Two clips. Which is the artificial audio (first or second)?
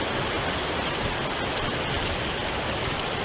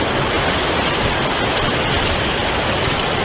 first